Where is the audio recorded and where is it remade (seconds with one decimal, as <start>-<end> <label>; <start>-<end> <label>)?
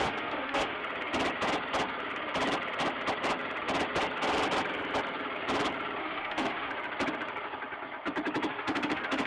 0.0-0.8 remade; 0.8-6.0 recorded; 6.0-6.7 remade; 6.7-8.5 recorded; 8.5-9.3 remade